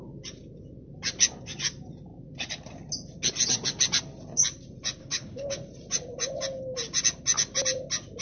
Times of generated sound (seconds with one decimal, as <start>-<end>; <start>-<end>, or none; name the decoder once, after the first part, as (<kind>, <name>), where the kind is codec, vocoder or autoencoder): 5.0-5.5 (codec, HILCodec)